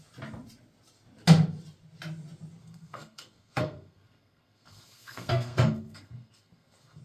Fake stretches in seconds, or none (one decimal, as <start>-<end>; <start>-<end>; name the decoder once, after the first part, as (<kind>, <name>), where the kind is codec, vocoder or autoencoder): 2.6-7.0 (codec, SNAC)